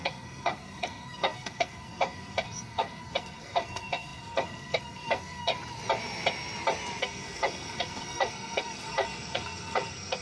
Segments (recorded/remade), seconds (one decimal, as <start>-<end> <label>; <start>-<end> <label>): 0.0-5.5 remade; 5.5-7.0 recorded; 7.0-10.2 remade